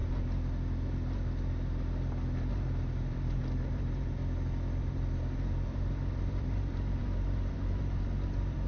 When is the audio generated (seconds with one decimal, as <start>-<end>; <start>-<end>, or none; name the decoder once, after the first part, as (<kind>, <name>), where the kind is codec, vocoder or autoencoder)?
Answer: 2.5-4.2 (vocoder, BigVGAN v2); 4.8-8.7